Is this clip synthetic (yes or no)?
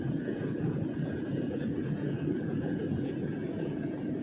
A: yes